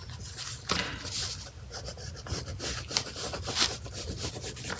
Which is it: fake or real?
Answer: real